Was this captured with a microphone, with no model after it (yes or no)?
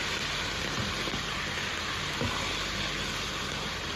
yes